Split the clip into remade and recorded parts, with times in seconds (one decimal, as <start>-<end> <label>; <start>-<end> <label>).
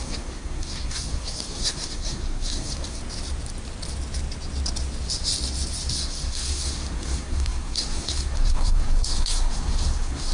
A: 0.0-3.0 remade; 3.0-5.9 recorded; 5.9-10.3 remade